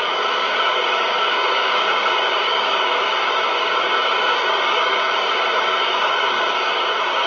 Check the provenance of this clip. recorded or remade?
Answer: remade